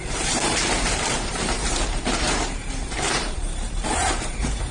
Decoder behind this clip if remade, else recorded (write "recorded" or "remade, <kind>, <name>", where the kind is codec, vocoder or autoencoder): remade, vocoder, BigVGAN v2